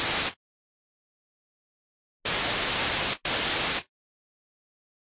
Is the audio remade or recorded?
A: recorded